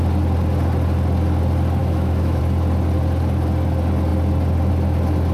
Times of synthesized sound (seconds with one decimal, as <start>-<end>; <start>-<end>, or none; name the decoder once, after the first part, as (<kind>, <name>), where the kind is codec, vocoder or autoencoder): 1.8-2.4 (autoencoder, DAC-VAE)